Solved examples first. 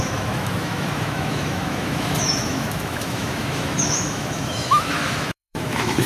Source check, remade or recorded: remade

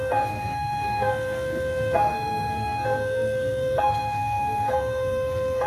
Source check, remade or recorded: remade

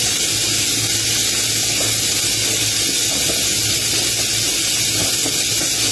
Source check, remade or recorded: recorded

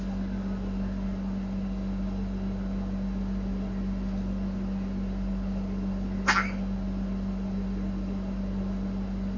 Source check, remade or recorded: recorded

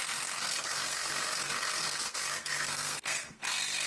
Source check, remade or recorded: remade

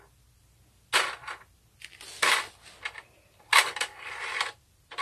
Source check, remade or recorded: recorded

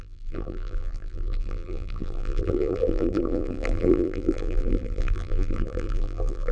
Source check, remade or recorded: remade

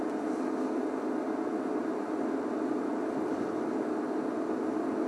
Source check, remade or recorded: recorded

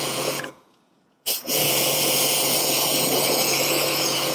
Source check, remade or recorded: remade